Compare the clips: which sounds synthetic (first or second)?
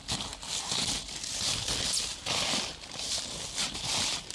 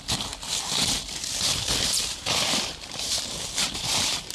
second